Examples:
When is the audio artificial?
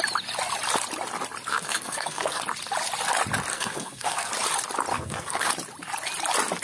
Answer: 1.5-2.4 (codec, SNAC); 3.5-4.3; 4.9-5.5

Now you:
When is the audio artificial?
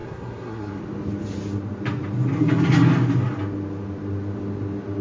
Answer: 0.0-0.8 (codec, SNAC)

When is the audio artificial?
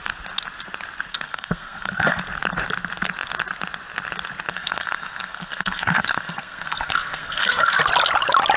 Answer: 1.1-2.2 (codec, SNAC); 4.5-7.8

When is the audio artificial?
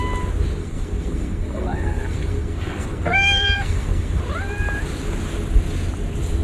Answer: 0.6-4.2 (codec, SNAC)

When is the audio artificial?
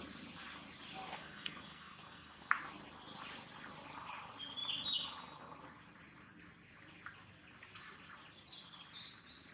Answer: 1.1-2.5 (codec, SNAC)